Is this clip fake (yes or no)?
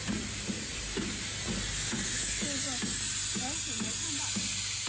no